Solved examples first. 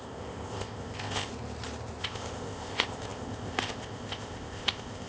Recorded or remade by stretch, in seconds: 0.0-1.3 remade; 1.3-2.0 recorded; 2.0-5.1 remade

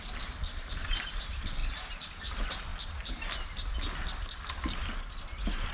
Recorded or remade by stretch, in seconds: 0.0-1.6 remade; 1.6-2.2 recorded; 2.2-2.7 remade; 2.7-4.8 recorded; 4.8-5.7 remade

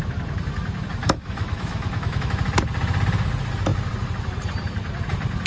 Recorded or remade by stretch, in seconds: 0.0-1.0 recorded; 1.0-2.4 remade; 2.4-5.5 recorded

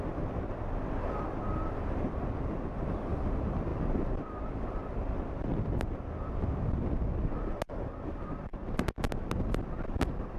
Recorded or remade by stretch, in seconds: 0.0-10.4 recorded